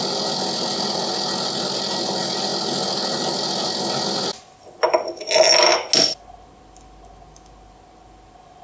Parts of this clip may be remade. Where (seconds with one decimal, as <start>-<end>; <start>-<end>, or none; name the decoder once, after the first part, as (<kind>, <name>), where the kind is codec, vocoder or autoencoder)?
none

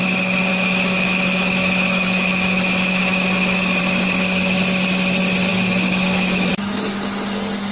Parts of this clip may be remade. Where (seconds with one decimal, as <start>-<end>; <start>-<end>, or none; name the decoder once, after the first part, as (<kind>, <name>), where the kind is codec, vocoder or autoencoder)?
0.5-3.8 (autoencoder, DAC-VAE); 5.5-6.5

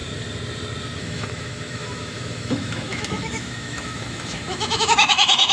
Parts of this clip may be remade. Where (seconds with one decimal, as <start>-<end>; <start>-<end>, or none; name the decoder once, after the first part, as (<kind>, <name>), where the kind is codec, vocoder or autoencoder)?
1.0-5.5 (autoencoder, DAC-VAE)

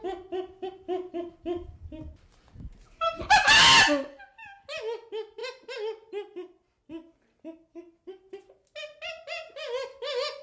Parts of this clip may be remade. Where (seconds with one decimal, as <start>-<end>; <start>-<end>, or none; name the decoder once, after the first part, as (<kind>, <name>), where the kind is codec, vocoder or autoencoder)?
none

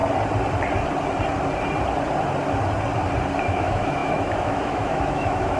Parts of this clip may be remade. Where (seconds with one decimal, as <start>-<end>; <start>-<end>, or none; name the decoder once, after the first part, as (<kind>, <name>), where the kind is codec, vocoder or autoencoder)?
3.4-5.6 (autoencoder, DAC-VAE)

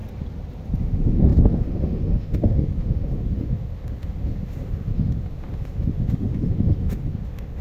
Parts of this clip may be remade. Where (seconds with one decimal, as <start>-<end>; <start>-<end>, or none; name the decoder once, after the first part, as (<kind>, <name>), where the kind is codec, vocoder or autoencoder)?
0.8-7.6 (autoencoder, DAC-VAE)

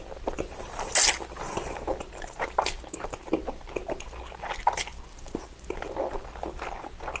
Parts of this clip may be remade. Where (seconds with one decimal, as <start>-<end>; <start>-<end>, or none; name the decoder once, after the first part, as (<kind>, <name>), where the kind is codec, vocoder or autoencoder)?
none

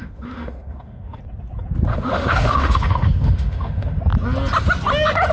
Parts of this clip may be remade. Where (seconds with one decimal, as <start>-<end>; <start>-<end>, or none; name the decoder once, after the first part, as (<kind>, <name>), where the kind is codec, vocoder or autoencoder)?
0.0-1.2 (autoencoder, DAC-VAE); 1.9-4.0